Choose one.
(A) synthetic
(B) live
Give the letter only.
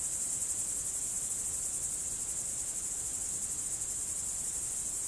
B